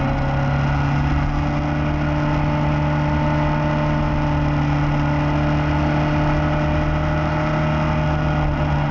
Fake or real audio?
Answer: real